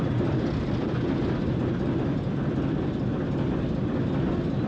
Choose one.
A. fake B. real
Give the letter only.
B